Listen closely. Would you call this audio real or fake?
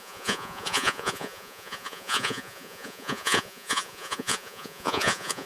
fake